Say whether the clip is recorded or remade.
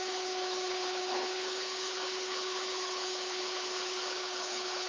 remade